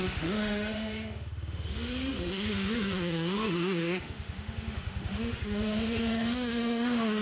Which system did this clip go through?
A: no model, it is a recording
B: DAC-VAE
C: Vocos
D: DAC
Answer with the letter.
B